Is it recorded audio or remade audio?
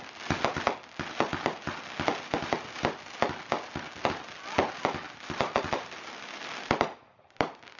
recorded